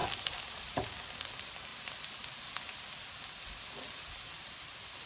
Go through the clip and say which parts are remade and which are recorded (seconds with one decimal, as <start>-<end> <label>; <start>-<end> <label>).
0.0-5.1 recorded